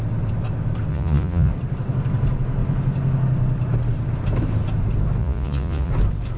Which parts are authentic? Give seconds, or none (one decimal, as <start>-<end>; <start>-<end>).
0.0-0.9; 1.5-5.2; 5.9-6.4

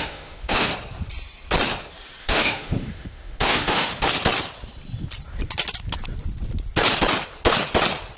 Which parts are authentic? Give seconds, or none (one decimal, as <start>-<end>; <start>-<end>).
0.7-2.2; 3.9-8.2